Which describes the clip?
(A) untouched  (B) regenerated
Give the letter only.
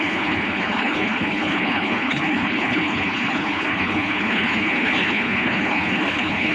B